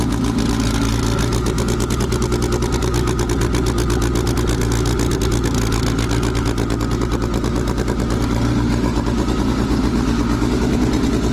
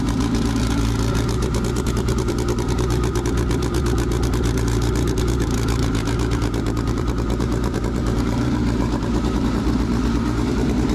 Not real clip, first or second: second